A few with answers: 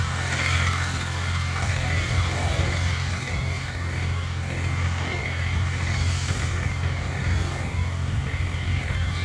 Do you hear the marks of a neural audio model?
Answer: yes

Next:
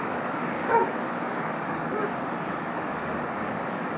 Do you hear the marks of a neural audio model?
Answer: yes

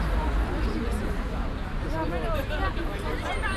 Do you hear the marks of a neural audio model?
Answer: no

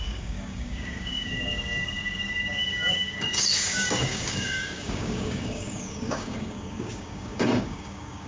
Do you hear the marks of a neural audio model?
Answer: yes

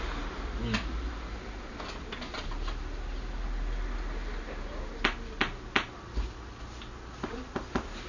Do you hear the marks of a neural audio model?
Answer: no